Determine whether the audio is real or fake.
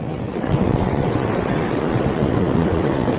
fake